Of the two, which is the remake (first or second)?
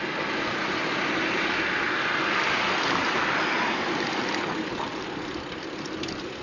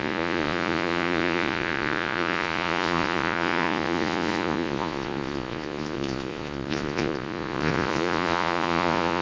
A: second